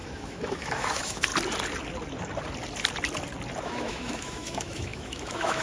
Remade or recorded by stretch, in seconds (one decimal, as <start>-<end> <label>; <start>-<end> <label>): 0.0-1.3 remade; 1.3-3.6 recorded; 3.6-5.6 remade